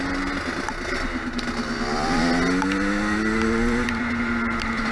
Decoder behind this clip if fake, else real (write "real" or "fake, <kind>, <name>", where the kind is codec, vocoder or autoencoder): real